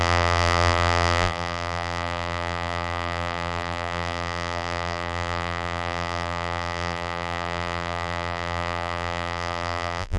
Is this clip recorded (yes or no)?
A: no